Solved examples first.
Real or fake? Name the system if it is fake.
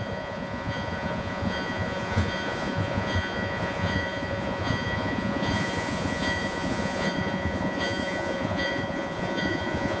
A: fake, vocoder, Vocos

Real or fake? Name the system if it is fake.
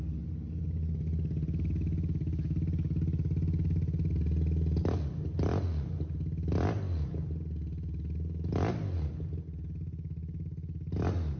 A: real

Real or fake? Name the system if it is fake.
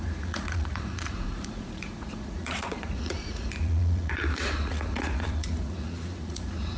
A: fake, vocoder, Vocos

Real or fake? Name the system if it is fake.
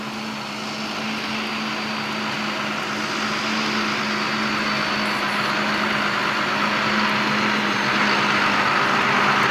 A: real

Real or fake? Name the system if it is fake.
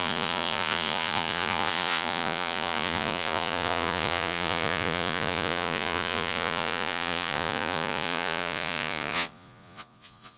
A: fake, vocoder, Vocos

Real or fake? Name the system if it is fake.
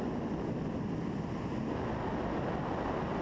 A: real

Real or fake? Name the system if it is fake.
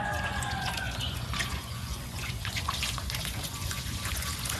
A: fake, vocoder, Vocos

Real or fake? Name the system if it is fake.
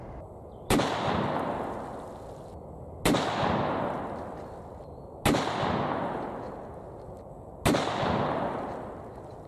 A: real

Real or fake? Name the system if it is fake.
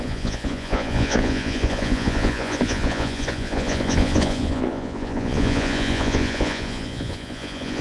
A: fake, vocoder, Vocos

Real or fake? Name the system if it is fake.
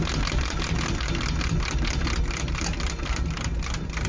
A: real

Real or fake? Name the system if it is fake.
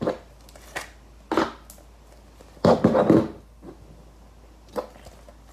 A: real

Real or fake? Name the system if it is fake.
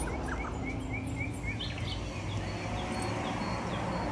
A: real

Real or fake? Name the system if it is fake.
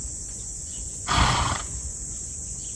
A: fake, vocoder, Vocos